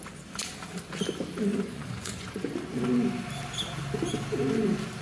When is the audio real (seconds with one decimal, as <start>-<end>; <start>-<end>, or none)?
0.0-1.5; 2.8-5.0